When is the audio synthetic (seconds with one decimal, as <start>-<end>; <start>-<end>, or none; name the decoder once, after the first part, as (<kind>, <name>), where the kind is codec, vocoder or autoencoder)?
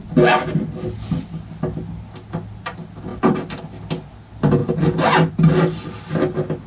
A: none